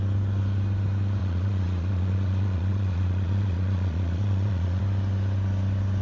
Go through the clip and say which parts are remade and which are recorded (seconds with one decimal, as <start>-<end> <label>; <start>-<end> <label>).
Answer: 0.0-1.2 recorded; 1.2-4.8 remade; 4.8-6.0 recorded